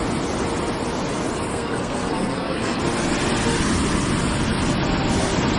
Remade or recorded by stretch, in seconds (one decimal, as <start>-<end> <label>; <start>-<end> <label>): 0.0-1.5 recorded; 1.5-2.8 remade; 2.8-5.6 recorded